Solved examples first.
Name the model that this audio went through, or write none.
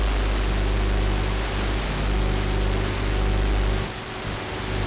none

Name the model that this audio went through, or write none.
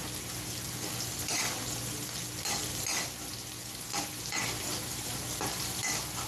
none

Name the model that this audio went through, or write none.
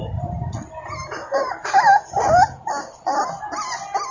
none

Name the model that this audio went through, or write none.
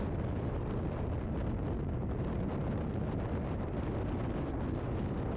none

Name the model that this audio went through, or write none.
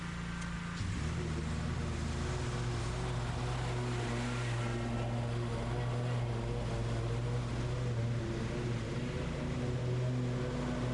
none